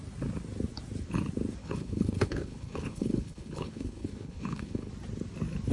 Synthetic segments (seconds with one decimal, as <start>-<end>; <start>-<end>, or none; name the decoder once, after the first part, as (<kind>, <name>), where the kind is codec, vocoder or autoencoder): 1.6-4.9 (codec, HILCodec)

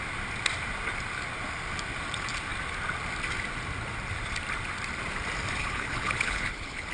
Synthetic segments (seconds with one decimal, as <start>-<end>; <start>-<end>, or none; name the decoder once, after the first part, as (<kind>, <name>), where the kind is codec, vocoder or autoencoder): 5.6-6.9 (codec, HILCodec)

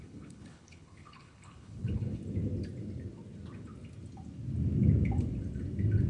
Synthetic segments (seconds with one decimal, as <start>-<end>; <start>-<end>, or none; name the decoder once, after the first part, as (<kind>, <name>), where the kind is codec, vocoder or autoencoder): 0.0-2.2 (codec, HILCodec)

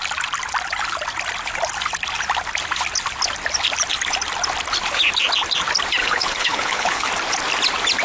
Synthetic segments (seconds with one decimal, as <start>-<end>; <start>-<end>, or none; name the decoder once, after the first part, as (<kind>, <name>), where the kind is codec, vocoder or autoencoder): 6.0-7.1 (codec, HILCodec)